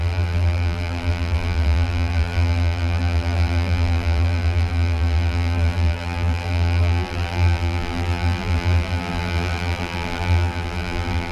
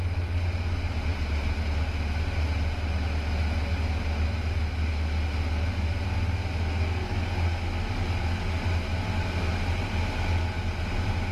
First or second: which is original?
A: second